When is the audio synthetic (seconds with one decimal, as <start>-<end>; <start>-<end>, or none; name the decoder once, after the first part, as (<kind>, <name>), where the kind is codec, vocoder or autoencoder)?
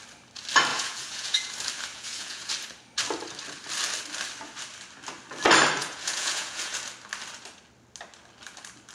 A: 0.7-1.5 (vocoder, Vocos); 1.9-2.5; 5.8-6.8